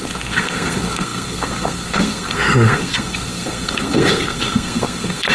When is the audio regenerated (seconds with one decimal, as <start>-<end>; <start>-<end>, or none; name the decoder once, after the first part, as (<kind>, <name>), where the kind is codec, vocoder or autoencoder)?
0.0-5.3 (codec, SNAC)